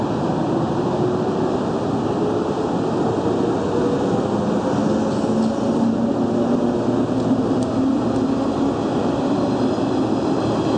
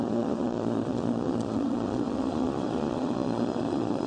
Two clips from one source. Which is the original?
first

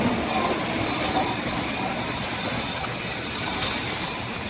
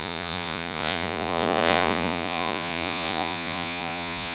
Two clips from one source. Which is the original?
first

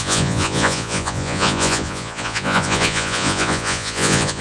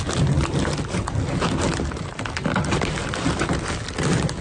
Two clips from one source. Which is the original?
second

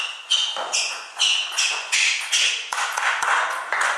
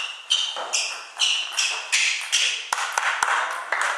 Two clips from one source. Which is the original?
second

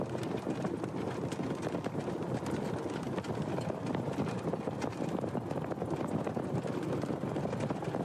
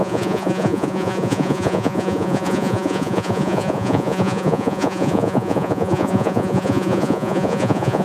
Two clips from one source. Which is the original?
first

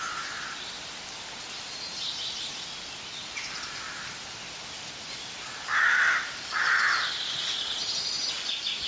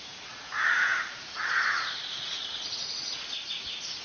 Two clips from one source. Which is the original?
first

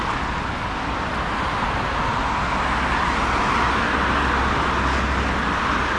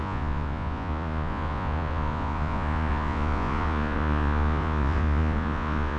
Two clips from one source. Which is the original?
first